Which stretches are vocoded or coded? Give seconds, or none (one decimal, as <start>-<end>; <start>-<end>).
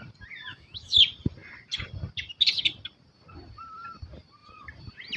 0.5-1.0